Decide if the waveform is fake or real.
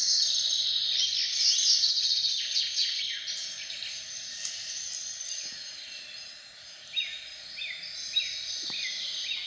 real